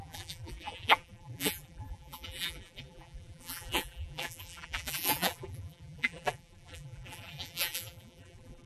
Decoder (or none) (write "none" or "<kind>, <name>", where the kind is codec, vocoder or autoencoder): vocoder, BigVGAN v2